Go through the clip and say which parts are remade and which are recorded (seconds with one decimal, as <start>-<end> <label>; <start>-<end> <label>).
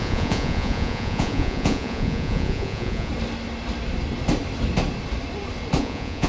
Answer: 0.0-3.1 remade; 3.1-5.8 recorded; 5.8-6.3 remade